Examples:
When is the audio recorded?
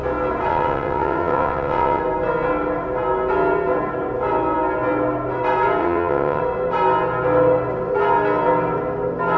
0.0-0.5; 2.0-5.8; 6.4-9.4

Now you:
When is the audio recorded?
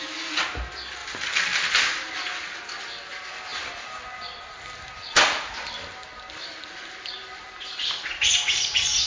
0.0-1.0; 2.1-9.1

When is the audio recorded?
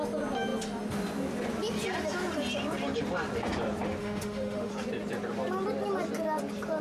0.0-4.0; 4.7-6.8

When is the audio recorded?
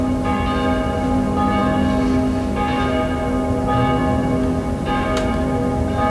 0.0-6.1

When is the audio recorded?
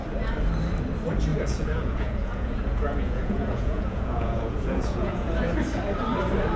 0.0-1.3; 5.3-6.6